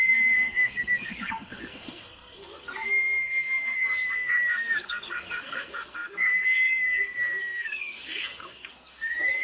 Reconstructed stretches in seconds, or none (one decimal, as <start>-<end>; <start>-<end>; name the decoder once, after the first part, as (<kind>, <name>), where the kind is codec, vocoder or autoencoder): 0.0-9.4 (codec, SNAC)